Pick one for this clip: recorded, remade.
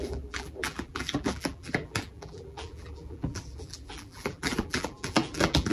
remade